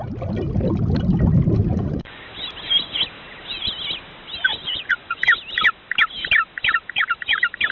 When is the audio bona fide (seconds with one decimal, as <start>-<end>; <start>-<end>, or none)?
0.0-1.6; 2.2-4.5; 5.2-7.7